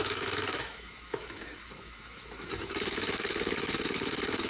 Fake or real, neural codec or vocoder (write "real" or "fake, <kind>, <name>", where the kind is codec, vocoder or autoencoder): fake, autoencoder, DAC-VAE